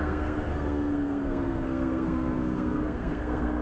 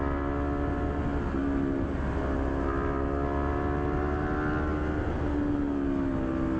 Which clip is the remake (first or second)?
first